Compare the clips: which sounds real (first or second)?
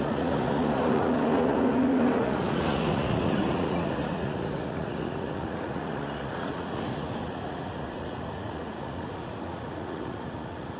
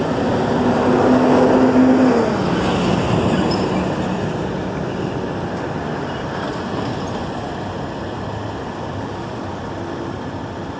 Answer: second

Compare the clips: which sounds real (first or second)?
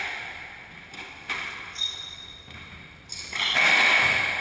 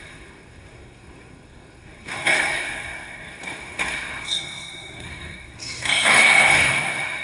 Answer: first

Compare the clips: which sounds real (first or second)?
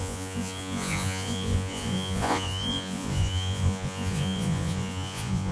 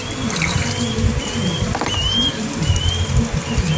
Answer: second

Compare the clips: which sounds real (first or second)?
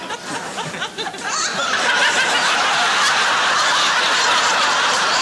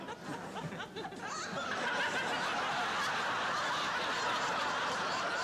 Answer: second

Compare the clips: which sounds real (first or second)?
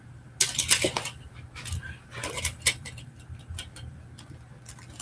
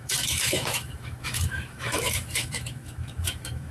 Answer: first